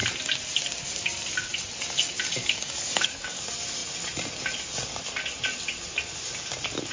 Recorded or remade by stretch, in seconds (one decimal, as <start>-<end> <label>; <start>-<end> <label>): 0.0-2.4 recorded; 2.4-3.4 remade; 3.4-6.9 recorded